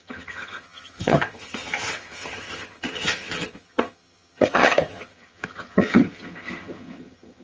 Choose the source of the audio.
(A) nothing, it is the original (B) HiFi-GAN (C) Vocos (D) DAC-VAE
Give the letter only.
B